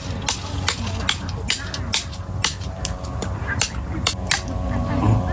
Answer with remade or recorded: recorded